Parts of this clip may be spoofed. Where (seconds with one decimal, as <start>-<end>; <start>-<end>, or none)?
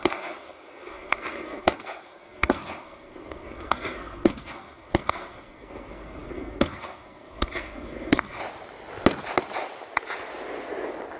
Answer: 0.0-8.4